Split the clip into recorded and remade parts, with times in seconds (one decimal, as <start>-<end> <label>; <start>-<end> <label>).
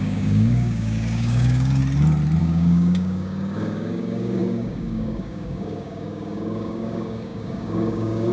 0.0-1.8 remade; 1.8-2.4 recorded; 2.4-8.3 remade